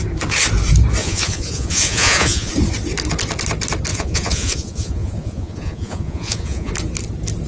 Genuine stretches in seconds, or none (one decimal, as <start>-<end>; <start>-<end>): 0.0-1.0; 2.5-3.9; 6.7-7.5